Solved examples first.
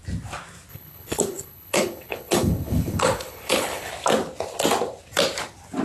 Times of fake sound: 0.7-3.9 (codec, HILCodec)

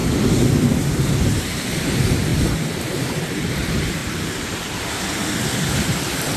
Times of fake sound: 2.3-3.5 (vocoder, BigVGAN v2); 4.0-4.9

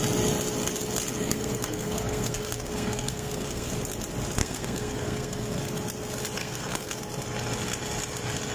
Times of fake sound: 1.1-3.7 (codec, SNAC); 4.4-5.6; 6.4-7.0

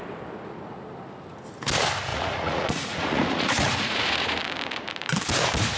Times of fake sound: 2.1-4.4 (vocoder, Vocos)

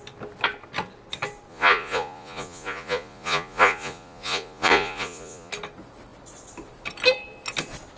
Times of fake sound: 1.5-5.5 (vocoder, Vocos)

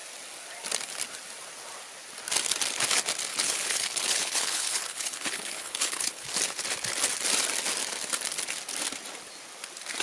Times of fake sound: 3.3-6.3 (codec, HILCodec)

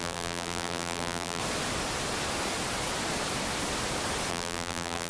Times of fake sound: 0.0-1.4 (vocoder, BigVGAN v2); 4.3-5.1